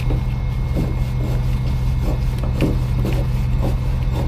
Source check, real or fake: real